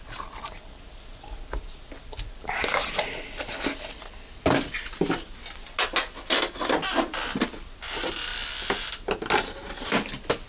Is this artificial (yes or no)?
no